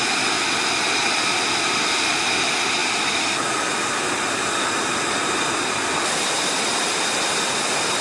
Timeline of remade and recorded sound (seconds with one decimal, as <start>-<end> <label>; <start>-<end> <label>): 0.0-8.0 recorded